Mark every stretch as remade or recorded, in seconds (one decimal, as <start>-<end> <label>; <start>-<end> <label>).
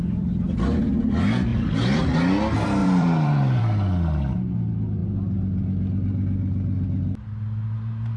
0.0-1.5 recorded; 1.5-2.0 remade; 2.0-2.8 recorded; 2.8-3.6 remade; 3.6-8.2 recorded